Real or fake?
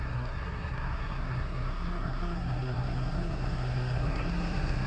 fake